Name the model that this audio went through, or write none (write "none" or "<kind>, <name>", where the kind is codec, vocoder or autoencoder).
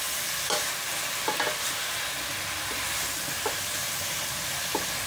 none